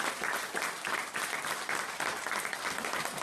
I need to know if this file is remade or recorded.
recorded